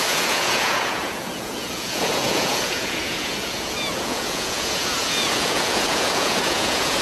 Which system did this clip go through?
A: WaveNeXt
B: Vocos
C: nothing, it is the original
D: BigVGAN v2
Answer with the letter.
B